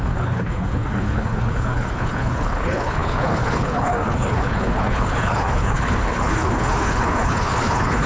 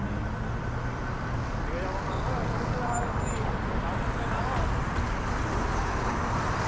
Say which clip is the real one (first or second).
second